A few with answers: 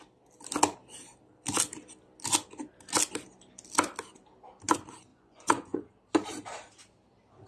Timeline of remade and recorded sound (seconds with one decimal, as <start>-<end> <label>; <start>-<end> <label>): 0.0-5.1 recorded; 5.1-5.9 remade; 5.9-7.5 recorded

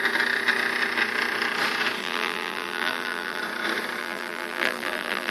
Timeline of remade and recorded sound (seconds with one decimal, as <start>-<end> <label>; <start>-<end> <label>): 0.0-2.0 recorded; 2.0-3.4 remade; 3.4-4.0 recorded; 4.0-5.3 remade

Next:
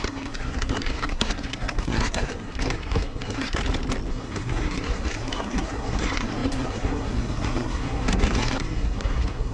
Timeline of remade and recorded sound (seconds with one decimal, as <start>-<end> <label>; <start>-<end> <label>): 0.0-3.6 remade; 3.6-4.1 recorded; 4.1-9.5 remade

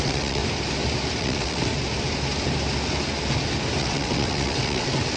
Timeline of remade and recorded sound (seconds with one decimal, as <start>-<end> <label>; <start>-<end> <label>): 0.0-0.4 remade; 0.4-1.2 recorded; 1.2-1.7 remade; 1.7-3.8 recorded; 3.8-5.2 remade